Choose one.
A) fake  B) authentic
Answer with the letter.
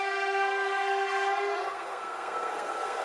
A